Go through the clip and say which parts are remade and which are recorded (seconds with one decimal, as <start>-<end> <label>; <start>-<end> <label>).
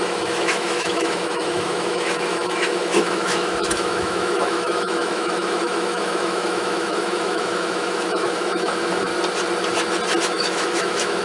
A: 0.0-9.1 remade; 9.1-10.2 recorded; 10.2-11.2 remade